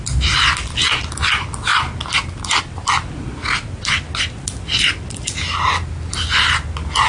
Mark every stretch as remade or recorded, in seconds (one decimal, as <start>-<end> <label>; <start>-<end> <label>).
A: 0.0-7.1 recorded